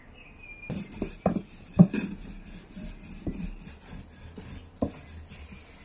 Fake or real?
real